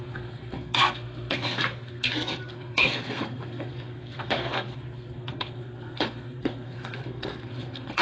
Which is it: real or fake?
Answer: fake